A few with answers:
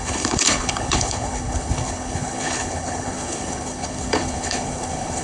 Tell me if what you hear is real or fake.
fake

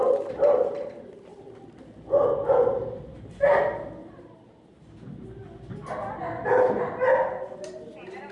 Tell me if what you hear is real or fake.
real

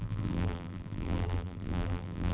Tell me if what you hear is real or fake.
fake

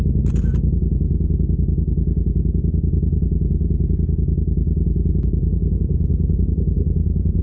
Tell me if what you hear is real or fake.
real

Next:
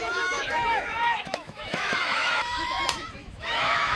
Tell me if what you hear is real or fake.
fake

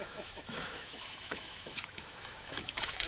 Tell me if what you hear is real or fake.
fake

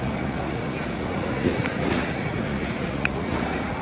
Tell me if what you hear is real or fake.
fake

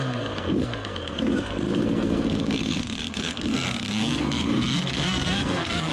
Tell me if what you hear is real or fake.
fake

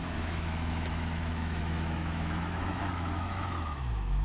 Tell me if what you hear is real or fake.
fake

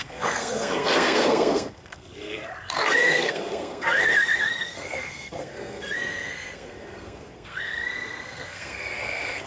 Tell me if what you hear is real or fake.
fake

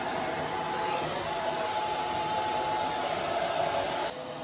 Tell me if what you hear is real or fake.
real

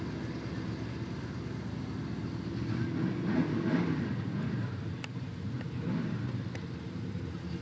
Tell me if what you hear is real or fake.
real